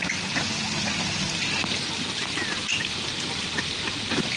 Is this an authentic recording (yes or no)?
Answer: yes